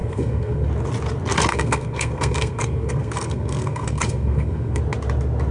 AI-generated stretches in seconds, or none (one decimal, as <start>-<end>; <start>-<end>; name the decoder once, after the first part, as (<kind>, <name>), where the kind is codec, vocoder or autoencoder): 0.0-0.7 (codec, SNAC); 1.5-4.8